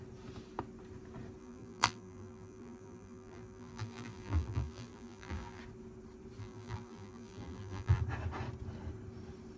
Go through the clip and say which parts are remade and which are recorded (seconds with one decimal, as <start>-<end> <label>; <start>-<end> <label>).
0.0-1.4 recorded; 1.4-5.6 remade; 5.6-6.4 recorded; 6.4-8.0 remade; 8.0-9.6 recorded